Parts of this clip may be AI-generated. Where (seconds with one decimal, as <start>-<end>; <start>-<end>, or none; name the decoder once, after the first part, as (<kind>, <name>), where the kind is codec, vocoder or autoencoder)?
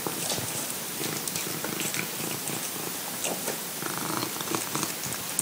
0.0-1.0 (vocoder, BigVGAN v2); 2.2-4.2